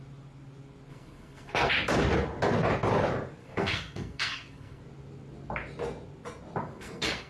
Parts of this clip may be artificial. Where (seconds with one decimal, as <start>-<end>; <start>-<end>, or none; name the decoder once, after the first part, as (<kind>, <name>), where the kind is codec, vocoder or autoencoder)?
0.9-1.7 (codec, SNAC); 3.4-4.8; 6.6-7.3